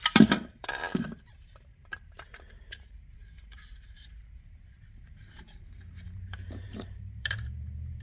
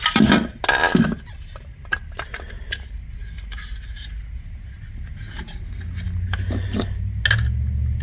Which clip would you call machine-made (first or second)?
first